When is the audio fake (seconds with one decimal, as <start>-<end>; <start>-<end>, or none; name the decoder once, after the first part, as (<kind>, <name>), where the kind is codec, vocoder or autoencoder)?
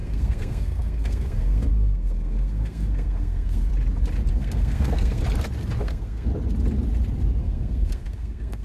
0.0-3.7 (codec, SNAC); 4.3-5.2; 5.8-6.3; 7.4-8.6